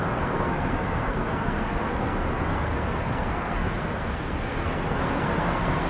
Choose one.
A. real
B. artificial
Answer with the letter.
B